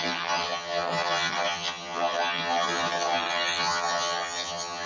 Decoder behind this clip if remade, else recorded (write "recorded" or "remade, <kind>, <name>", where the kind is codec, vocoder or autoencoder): remade, vocoder, HiFi-GAN